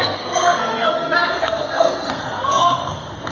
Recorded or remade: remade